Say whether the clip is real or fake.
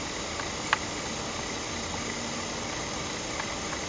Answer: real